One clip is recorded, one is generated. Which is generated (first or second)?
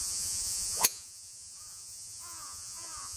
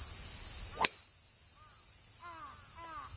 first